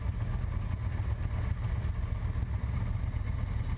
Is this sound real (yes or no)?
yes